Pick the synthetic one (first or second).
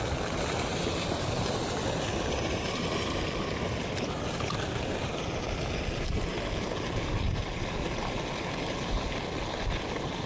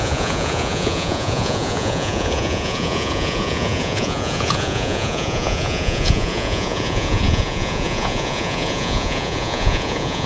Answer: second